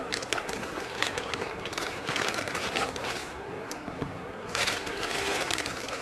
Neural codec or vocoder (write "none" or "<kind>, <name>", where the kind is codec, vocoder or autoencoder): codec, SNAC